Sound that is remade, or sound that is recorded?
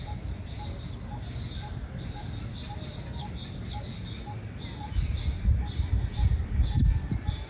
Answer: recorded